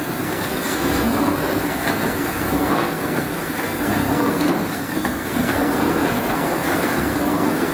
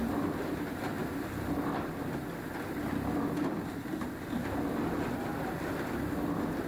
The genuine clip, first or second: second